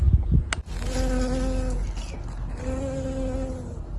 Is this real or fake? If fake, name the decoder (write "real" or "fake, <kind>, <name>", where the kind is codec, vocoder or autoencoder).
real